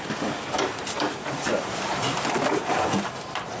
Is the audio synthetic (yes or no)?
yes